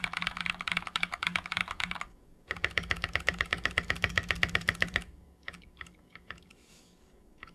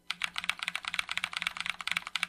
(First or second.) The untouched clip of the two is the second